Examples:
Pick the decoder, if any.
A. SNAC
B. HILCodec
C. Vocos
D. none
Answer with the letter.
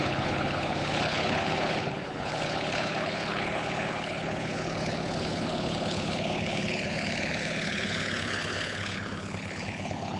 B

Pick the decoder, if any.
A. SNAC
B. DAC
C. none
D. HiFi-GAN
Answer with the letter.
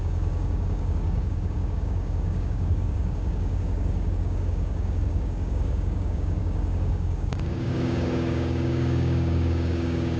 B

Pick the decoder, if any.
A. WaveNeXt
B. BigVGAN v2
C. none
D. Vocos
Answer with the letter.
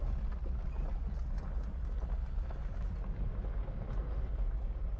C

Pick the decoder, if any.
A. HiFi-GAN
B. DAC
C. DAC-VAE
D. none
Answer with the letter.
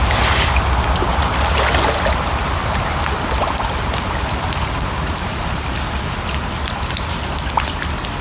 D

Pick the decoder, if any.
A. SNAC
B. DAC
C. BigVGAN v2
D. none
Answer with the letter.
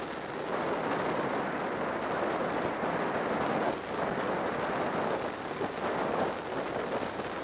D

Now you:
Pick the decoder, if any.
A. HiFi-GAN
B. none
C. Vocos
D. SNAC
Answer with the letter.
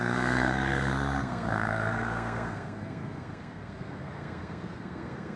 D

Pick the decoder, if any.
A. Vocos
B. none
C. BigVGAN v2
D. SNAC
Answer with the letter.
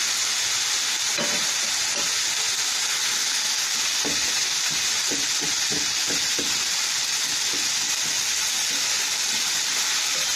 B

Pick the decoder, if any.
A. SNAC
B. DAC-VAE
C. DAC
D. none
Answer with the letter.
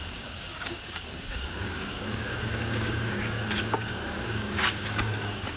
C